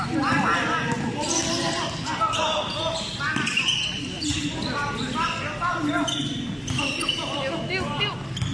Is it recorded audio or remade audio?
recorded